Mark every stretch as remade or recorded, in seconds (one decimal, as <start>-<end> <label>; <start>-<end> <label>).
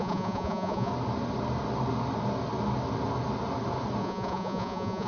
0.0-0.9 remade; 0.9-4.0 recorded; 4.0-5.1 remade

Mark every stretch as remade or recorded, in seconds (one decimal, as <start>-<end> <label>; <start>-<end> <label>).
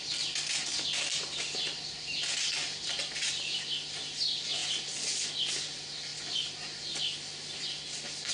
0.0-8.3 recorded